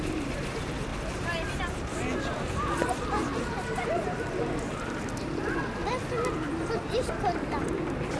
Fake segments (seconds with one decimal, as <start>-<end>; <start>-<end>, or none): 0.9-5.0